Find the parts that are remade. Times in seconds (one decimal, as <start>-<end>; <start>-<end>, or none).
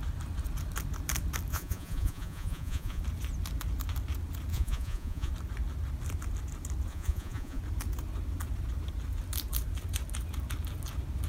1.5-3.0; 4.5-5.3; 6.9-7.6